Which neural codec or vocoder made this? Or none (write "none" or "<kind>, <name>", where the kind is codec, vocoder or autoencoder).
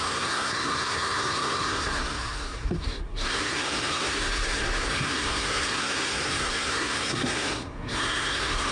codec, SNAC